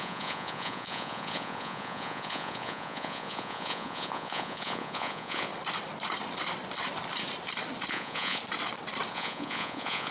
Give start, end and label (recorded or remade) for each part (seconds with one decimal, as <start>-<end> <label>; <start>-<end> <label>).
0.0-5.5 remade; 5.5-7.9 recorded; 7.9-8.4 remade; 8.4-9.1 recorded; 9.1-10.1 remade